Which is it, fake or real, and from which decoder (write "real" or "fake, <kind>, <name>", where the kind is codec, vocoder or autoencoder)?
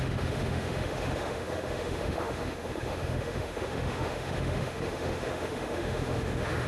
fake, autoencoder, DAC-VAE